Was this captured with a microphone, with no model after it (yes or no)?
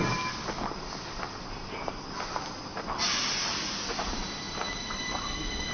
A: yes